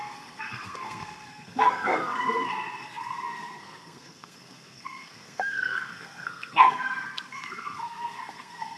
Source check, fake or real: fake